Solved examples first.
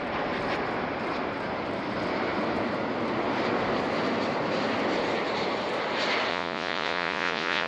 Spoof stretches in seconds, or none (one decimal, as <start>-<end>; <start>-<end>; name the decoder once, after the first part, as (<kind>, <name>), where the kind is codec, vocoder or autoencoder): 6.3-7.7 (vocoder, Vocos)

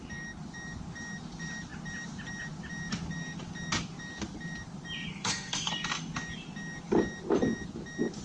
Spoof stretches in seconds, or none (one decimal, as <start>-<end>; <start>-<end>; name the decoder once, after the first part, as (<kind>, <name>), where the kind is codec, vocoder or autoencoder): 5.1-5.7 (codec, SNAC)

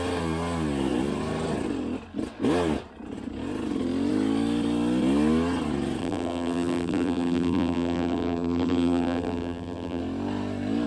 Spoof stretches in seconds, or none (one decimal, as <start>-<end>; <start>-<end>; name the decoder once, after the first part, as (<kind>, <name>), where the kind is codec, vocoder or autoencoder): 6.0-10.0 (vocoder, BigVGAN v2)